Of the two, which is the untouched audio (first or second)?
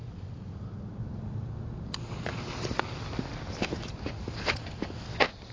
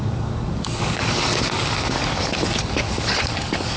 first